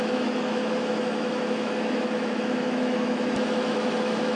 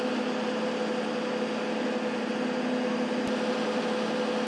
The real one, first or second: second